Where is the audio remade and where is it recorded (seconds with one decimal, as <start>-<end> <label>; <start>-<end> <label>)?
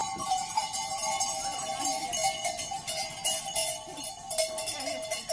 0.0-5.3 recorded